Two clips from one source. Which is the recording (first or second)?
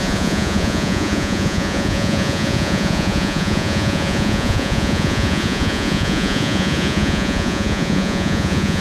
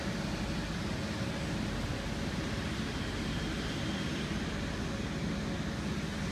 second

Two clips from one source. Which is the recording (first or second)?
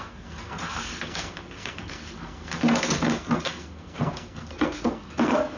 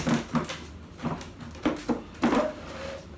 second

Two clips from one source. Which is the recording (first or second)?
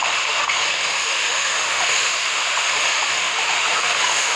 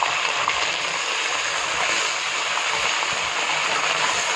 second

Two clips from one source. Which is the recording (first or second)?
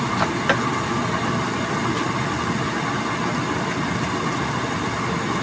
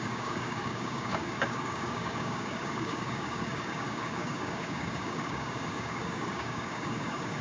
first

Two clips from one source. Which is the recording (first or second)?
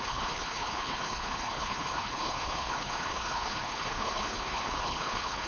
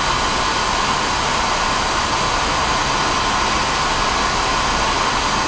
second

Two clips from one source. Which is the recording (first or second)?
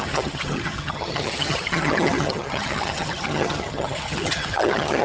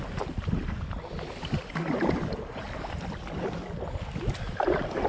second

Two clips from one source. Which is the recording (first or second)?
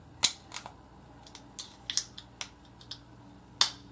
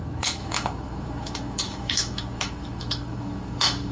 first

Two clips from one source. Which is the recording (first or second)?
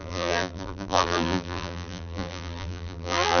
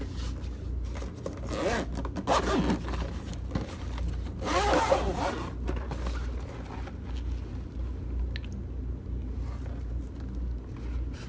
second